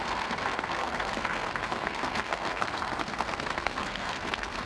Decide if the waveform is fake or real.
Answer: fake